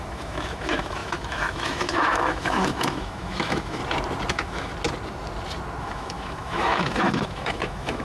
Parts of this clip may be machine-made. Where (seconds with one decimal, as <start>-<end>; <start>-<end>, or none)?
0.0-3.8; 4.3-4.7; 5.8-8.0